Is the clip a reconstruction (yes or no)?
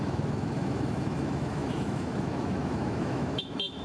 yes